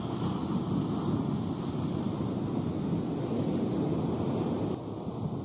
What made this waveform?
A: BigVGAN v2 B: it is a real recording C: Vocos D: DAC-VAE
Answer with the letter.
B